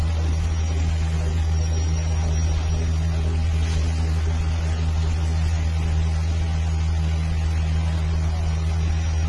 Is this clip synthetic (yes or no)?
no